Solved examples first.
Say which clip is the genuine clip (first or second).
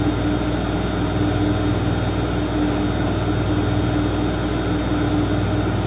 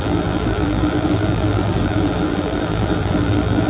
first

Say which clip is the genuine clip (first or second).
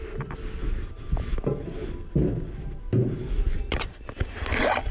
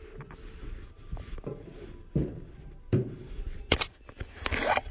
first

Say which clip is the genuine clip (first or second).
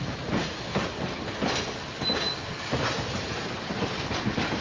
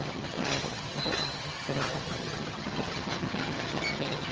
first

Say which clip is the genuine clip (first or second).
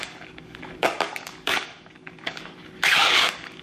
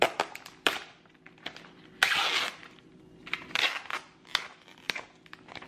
second